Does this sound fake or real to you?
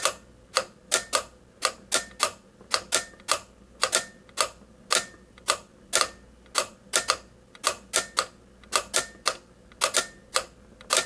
real